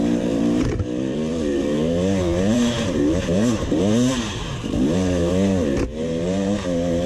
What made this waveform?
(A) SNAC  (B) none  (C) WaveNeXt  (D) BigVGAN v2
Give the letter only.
D